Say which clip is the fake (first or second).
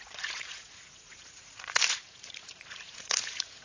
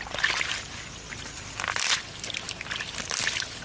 first